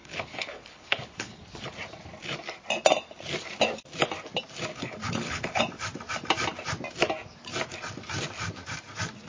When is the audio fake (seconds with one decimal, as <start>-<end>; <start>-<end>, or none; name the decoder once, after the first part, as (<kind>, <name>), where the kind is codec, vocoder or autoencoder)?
0.0-1.4 (codec, HILCodec); 4.7-5.6